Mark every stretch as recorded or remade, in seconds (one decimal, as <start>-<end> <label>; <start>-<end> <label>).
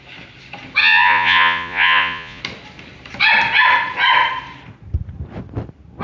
0.0-0.8 recorded; 0.8-2.4 remade; 2.4-6.0 recorded